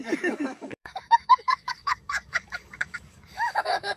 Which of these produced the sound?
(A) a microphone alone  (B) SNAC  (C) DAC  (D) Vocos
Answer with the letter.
C